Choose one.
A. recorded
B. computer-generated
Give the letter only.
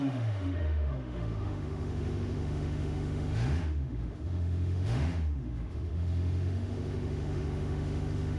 B